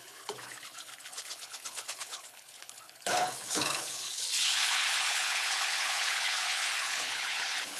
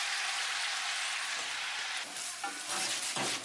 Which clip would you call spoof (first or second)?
first